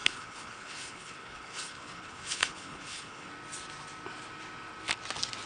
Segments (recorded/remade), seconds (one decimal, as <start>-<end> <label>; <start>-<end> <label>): 0.0-3.3 remade; 3.3-5.5 recorded